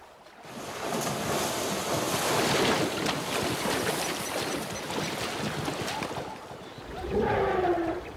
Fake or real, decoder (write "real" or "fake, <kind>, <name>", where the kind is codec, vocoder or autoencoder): real